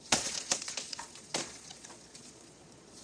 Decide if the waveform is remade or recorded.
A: remade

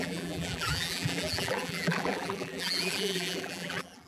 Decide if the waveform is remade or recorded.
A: remade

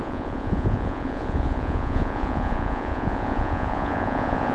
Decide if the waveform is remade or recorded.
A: remade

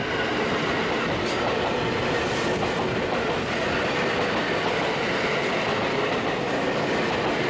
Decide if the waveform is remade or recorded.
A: recorded